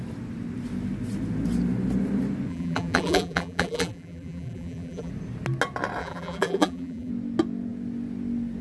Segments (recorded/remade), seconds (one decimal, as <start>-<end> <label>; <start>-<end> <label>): 0.0-2.5 recorded; 2.5-5.1 remade; 5.1-6.0 recorded; 6.0-7.1 remade; 7.1-8.6 recorded